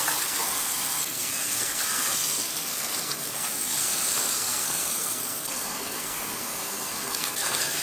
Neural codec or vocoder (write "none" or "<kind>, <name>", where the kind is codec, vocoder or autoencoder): codec, SNAC